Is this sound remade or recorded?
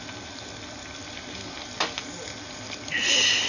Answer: recorded